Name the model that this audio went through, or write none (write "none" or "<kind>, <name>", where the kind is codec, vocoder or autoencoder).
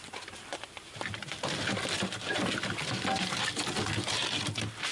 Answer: none